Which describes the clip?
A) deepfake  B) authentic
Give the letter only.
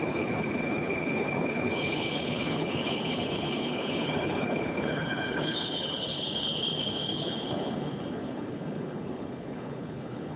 A